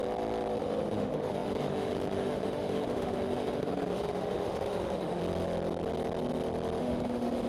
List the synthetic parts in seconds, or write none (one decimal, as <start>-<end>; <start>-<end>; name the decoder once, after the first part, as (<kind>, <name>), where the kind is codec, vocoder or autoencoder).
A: 0.6-5.2 (autoencoder, DAC-VAE); 6.8-7.5